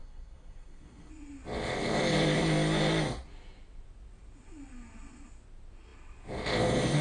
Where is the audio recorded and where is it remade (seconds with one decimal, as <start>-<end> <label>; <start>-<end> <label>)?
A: 0.0-1.1 remade; 1.1-7.0 recorded

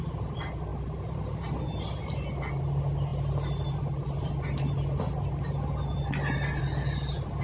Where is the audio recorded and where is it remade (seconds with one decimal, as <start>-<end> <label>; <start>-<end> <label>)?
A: 0.0-7.4 recorded